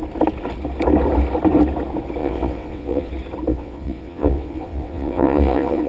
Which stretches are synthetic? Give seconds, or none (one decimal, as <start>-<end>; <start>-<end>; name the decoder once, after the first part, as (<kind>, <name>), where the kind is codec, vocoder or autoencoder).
2.2-3.1 (vocoder, WaveNeXt); 3.5-5.9